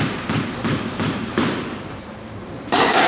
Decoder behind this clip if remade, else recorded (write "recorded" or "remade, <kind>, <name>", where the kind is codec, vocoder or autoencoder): remade, vocoder, BigVGAN v2